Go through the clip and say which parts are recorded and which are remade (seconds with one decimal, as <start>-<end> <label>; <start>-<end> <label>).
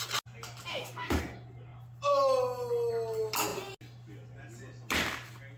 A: 0.0-0.7 recorded; 0.7-1.2 remade; 1.2-5.6 recorded